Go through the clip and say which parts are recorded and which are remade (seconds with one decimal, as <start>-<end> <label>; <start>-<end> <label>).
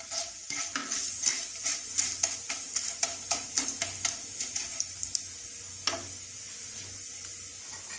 0.0-8.0 recorded